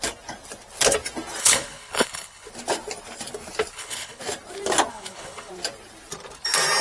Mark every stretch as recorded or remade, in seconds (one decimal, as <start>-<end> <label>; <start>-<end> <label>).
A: 0.0-1.4 recorded; 1.4-2.5 remade; 2.5-3.7 recorded; 3.7-4.2 remade; 4.2-4.9 recorded; 4.9-5.5 remade; 5.5-6.8 recorded

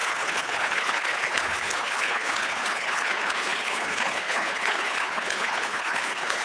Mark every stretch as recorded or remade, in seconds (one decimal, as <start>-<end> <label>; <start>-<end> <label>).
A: 0.0-6.4 remade